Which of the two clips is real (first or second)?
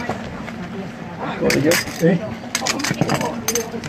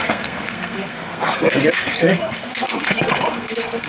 first